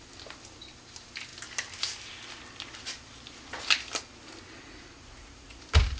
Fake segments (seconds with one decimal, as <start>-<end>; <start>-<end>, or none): 4.6-5.6